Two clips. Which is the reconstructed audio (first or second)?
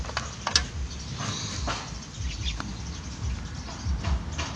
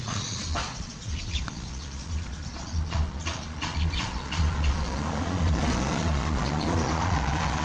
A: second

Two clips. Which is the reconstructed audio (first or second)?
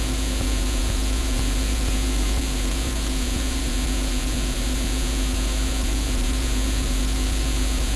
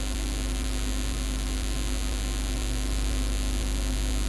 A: first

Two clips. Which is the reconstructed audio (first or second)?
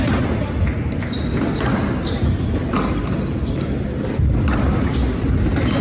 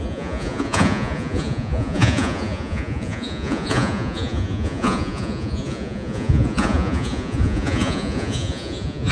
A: second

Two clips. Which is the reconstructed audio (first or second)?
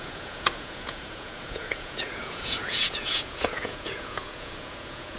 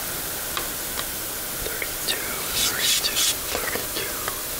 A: first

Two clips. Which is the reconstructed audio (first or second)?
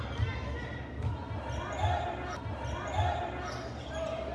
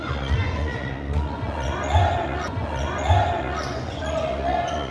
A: second